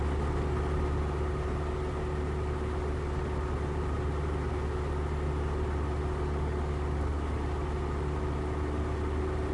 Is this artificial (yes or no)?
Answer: no